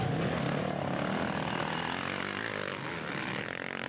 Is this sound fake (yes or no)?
no